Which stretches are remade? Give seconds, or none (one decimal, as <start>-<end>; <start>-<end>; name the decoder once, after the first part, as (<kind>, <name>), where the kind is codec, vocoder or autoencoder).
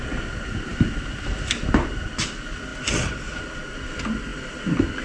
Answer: none